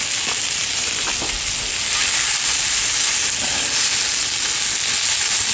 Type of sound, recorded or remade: recorded